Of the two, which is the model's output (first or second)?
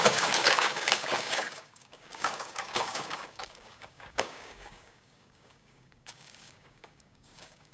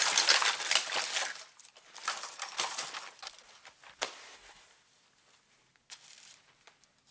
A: first